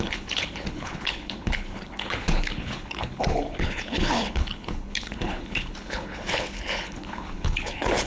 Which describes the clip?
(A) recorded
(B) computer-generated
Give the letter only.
B